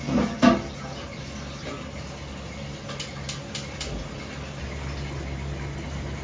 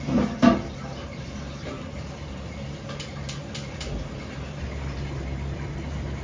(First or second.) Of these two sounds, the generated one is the second